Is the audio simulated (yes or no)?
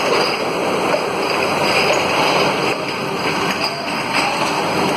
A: no